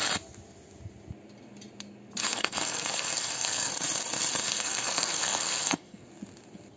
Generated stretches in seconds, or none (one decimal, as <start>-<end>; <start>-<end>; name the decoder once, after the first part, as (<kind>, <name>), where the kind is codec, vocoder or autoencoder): 2.2-3.7 (codec, SNAC); 4.4-6.1